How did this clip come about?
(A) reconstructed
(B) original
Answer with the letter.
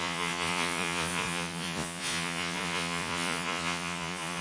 A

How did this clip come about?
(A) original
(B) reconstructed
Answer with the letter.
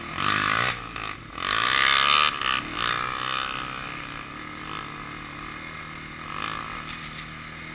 A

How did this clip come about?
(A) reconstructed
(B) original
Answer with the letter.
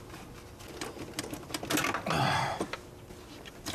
B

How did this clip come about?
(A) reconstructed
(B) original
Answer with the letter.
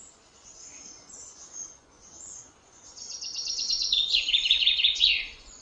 A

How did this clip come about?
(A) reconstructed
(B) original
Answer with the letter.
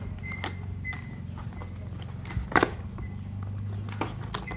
B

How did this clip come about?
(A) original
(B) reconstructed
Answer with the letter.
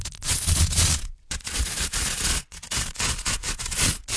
B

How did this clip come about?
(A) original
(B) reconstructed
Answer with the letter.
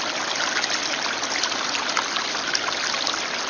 A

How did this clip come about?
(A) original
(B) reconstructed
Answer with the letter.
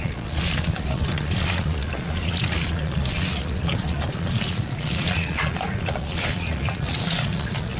B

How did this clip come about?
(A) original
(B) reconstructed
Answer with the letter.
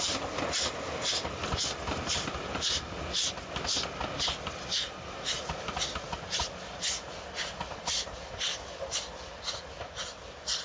A